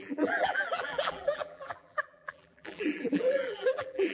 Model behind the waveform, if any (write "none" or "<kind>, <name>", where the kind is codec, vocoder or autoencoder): vocoder, BigVGAN v2